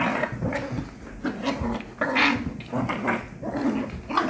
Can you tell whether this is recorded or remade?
recorded